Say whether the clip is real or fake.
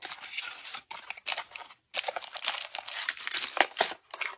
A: real